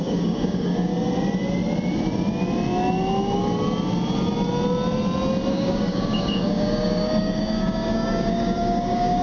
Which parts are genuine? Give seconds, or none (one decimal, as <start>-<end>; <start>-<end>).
0.9-5.5

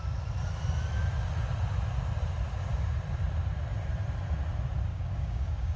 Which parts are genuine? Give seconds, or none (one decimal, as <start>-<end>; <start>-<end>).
0.0-4.9